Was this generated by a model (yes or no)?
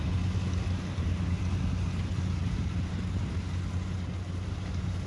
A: no